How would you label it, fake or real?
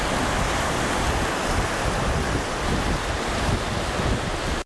real